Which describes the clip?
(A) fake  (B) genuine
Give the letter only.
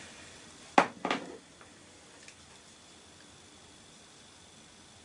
B